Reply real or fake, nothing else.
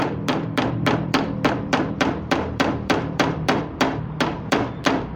fake